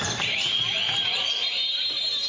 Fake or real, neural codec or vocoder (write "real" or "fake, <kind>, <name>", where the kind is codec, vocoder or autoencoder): real